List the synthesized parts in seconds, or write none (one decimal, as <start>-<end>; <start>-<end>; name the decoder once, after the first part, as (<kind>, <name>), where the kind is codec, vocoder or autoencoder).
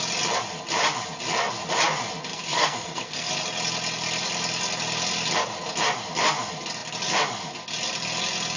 2.3-3.3 (codec, SNAC)